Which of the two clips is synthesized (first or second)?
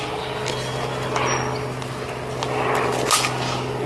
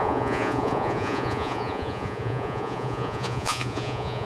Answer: second